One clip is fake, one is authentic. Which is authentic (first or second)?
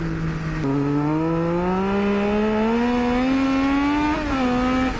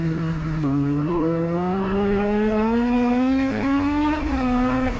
first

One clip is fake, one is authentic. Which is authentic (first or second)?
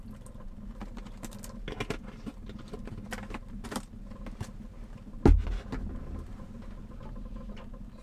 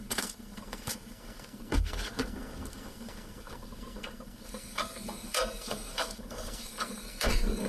first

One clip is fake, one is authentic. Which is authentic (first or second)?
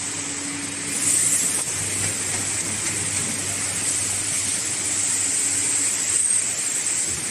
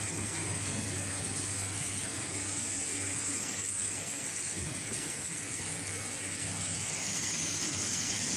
first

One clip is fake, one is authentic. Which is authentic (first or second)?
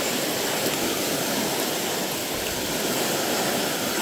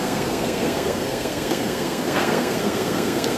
first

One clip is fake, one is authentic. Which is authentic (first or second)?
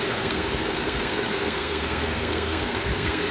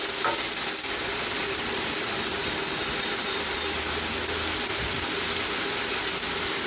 second